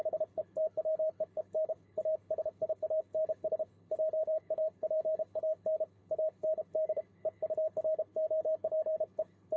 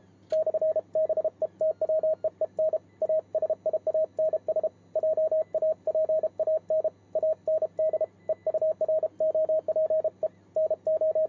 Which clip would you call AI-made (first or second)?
first